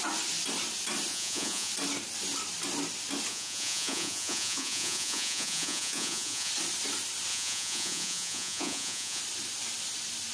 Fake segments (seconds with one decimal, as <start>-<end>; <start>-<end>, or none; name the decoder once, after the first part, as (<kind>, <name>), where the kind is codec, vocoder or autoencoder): 1.1-1.7 (vocoder, Vocos); 3.3-6.5; 7.3-9.2